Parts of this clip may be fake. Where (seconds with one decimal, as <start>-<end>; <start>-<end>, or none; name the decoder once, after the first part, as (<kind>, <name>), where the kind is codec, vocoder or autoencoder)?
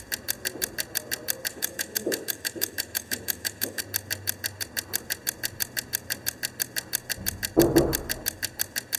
1.5-3.8 (autoencoder, DAC-VAE)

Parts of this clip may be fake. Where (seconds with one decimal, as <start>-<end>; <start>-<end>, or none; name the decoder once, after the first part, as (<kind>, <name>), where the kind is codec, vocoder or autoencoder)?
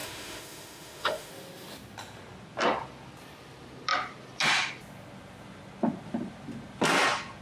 0.0-1.3 (autoencoder, DAC-VAE)